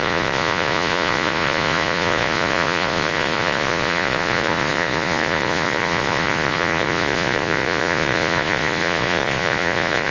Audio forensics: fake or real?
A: fake